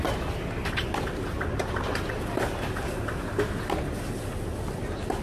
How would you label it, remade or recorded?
recorded